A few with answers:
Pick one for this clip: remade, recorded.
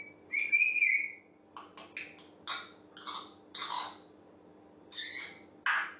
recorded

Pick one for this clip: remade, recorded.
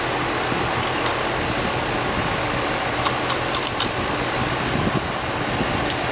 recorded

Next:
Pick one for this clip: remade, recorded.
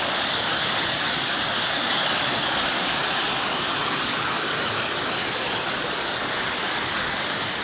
remade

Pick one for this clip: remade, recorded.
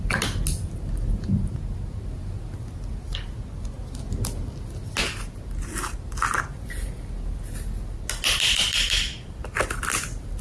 recorded